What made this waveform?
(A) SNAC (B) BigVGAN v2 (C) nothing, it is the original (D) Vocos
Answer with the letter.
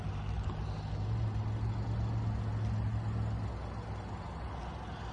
C